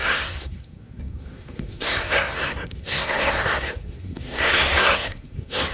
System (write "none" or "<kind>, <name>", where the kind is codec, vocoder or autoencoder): codec, SNAC